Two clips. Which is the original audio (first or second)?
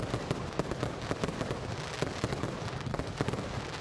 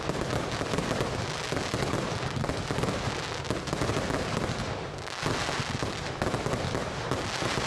second